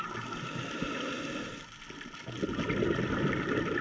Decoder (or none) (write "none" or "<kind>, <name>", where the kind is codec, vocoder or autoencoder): none